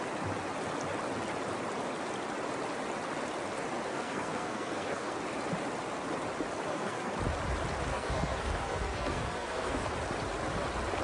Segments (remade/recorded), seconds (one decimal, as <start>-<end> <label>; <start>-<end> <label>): 0.0-3.9 recorded; 3.9-5.2 remade; 5.2-6.7 recorded; 6.7-7.2 remade; 7.2-7.9 recorded; 7.9-9.9 remade; 9.9-11.0 recorded